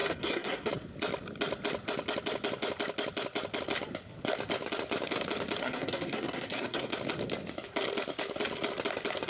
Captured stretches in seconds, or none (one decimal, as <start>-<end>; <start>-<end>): 0.7-5.6; 6.9-9.3